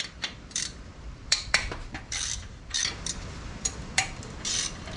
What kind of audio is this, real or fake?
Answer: fake